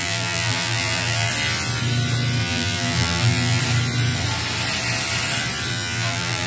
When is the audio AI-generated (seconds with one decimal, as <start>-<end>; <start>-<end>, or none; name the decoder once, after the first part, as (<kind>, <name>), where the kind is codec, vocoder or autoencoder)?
0.0-1.3 (vocoder, BigVGAN v2); 2.4-3.6; 5.7-6.5

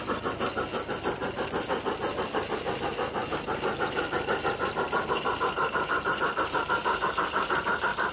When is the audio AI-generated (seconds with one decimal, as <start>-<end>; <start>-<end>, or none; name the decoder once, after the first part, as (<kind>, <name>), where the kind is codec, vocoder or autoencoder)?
none

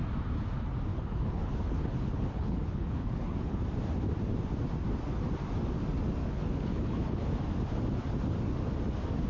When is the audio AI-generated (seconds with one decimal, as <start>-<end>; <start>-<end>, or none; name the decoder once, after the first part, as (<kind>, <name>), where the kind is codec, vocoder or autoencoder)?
0.9-3.6 (codec, HILCodec); 6.2-7.3

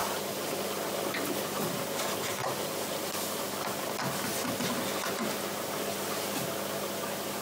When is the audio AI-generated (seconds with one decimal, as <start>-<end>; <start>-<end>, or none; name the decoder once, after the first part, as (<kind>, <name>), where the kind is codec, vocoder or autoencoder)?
0.0-1.8 (vocoder, BigVGAN v2); 2.4-3.4